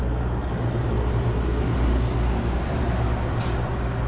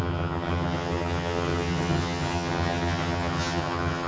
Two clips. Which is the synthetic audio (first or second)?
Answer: second